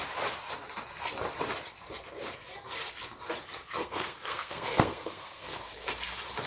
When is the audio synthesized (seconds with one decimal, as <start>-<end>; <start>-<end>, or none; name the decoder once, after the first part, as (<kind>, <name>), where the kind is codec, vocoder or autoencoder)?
3.8-5.6 (codec, SNAC)